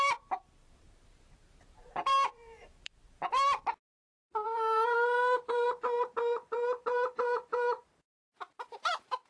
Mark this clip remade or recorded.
remade